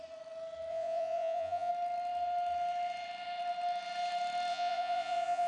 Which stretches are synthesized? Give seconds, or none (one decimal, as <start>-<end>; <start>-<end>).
0.7-1.7; 4.5-5.5